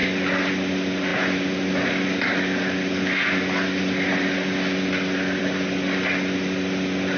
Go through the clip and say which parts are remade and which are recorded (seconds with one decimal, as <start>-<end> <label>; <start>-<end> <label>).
0.0-7.2 recorded